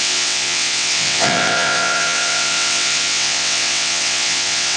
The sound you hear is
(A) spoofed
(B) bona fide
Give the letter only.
A